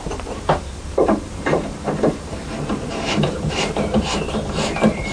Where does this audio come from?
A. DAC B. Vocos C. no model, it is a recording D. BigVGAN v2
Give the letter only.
D